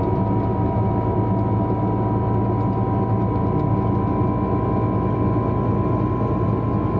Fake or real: real